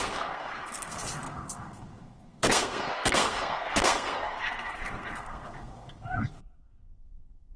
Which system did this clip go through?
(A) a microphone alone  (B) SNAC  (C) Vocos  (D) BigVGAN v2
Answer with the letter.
B